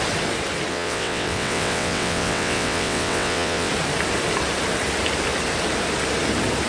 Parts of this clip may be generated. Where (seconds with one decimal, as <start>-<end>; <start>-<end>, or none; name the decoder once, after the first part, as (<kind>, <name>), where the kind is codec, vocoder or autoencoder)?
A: 0.7-3.7 (vocoder, WaveNeXt)